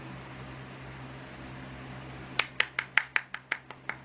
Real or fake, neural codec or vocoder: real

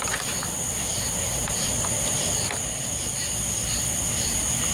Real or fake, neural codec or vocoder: real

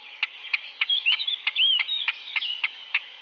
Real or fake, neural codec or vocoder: fake, codec, DAC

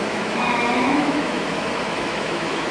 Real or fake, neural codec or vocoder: fake, autoencoder, DAC-VAE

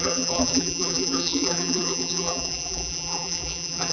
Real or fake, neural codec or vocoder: fake, vocoder, BigVGAN v2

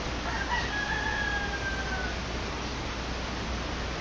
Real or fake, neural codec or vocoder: real